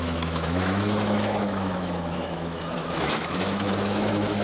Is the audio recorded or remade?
remade